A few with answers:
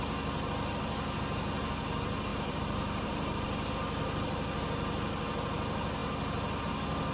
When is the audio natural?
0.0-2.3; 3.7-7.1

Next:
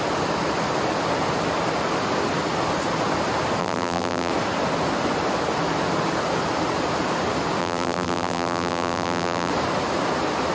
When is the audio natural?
0.0-3.6; 4.3-7.6; 9.5-10.5

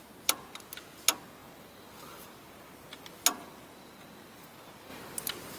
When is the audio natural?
0.0-5.6

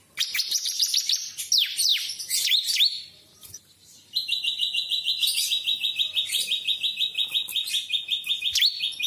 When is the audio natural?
1.3-1.9; 5.4-7.5; 8.4-9.1

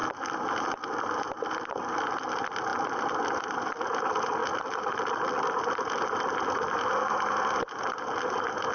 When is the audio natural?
0.0-8.7